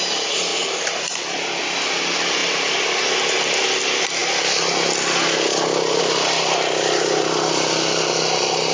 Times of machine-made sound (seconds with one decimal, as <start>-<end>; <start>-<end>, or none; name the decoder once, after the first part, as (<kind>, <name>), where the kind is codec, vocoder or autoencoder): 0.5-1.6 (vocoder, BigVGAN v2); 2.4-3.0